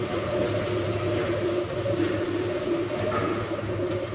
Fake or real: real